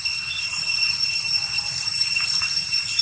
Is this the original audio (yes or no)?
yes